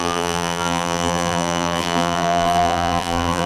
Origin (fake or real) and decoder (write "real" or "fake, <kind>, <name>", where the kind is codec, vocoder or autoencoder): fake, vocoder, BigVGAN v2